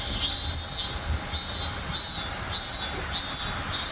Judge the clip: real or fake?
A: real